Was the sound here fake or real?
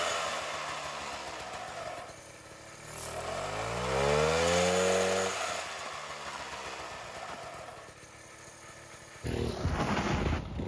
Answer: real